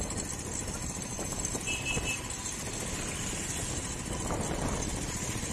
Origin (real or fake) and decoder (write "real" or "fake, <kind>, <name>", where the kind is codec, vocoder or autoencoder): real